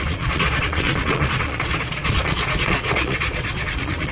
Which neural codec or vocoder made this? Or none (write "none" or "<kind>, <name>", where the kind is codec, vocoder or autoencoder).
vocoder, Vocos